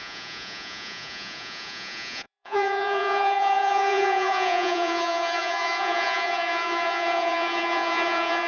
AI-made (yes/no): yes